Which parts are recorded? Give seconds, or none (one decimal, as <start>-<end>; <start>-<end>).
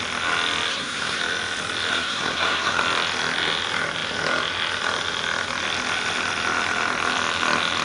0.0-0.7; 1.2-1.9; 2.8-7.8